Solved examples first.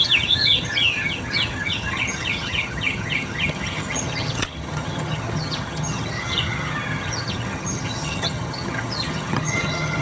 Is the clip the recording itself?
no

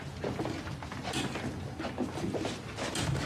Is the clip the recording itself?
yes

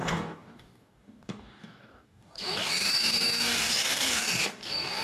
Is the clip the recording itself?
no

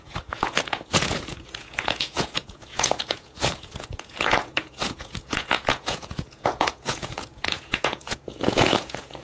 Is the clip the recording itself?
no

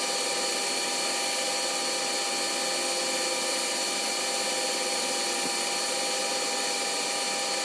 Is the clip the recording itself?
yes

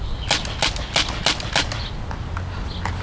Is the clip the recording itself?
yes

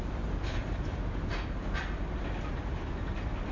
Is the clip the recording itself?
yes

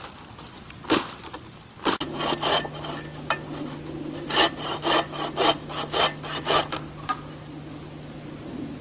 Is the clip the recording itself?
yes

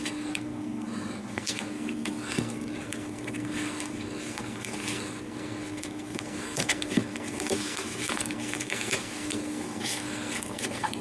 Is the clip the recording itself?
no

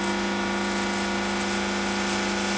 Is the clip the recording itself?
yes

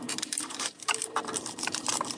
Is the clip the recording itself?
no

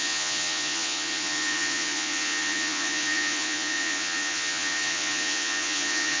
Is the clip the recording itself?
no